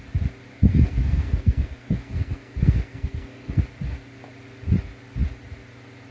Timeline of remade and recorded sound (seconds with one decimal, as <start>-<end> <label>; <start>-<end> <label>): 0.0-0.5 recorded; 0.5-3.6 remade; 3.6-6.1 recorded